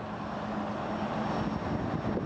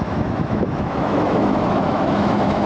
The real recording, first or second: first